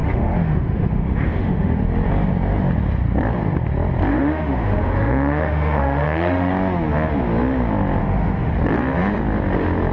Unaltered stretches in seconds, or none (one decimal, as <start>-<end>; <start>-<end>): 1.8-4.1; 6.5-8.0; 8.5-9.9